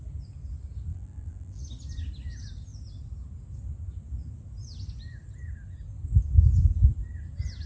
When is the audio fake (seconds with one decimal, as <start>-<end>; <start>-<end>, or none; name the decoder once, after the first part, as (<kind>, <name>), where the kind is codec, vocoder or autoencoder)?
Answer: 0.9-1.6 (vocoder, BigVGAN v2)